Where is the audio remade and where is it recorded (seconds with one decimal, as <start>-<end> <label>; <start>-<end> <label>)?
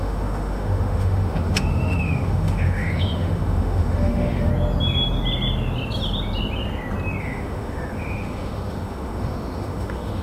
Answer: 0.0-4.5 remade; 4.5-7.2 recorded; 7.2-10.2 remade